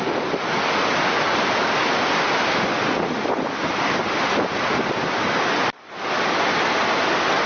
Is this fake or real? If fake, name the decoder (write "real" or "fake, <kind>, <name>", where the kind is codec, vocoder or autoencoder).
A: real